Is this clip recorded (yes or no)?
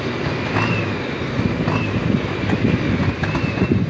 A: yes